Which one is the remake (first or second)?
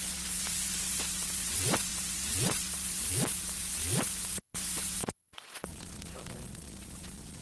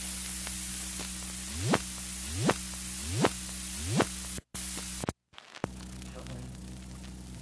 first